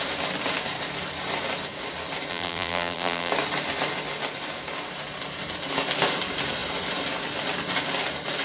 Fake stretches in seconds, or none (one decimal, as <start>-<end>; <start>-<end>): 2.3-3.3

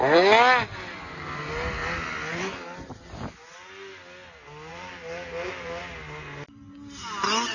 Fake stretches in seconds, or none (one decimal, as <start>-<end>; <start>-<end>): 4.7-5.8

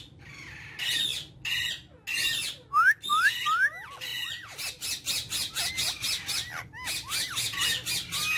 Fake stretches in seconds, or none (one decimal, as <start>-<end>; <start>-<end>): none

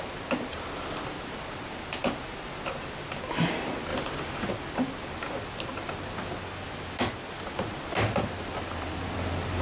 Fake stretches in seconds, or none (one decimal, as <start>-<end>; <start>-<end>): none

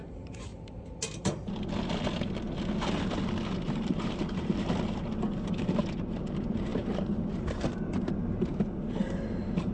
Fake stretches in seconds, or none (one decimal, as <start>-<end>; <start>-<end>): 0.0-0.5; 3.7-9.7